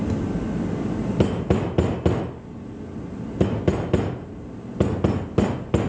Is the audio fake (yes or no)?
no